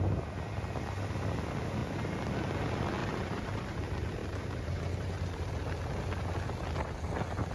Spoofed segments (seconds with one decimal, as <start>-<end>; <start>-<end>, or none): 3.0-3.7; 4.2-5.5